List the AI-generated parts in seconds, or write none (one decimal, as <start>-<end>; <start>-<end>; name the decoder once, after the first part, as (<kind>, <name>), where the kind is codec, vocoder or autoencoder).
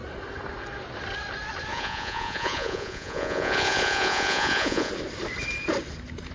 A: 1.7-4.9 (vocoder, Vocos)